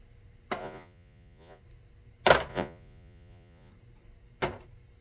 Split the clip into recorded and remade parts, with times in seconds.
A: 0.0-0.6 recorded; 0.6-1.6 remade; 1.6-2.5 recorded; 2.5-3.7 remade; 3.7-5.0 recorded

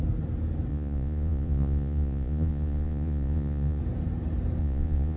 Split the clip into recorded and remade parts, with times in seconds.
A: 0.0-0.7 recorded; 0.7-3.8 remade; 3.8-4.6 recorded; 4.6-5.2 remade